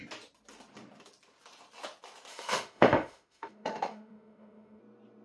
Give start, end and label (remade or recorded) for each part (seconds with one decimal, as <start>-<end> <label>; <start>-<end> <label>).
0.0-2.3 recorded; 2.3-4.8 remade; 4.8-5.2 recorded